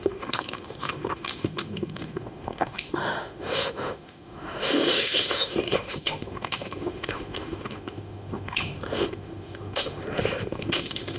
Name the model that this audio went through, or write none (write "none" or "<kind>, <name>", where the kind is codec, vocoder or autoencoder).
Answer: autoencoder, DAC-VAE